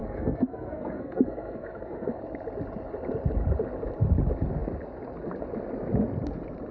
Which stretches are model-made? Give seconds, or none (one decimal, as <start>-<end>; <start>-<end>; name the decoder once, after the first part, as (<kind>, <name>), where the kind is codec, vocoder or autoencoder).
0.0-2.2 (codec, SNAC)